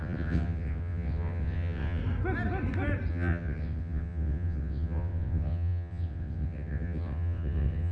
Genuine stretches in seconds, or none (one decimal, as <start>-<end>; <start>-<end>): 2.0-3.1